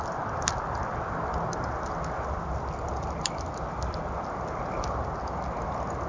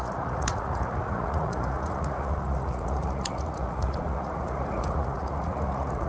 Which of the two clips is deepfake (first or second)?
second